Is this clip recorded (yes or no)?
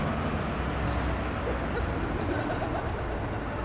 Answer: yes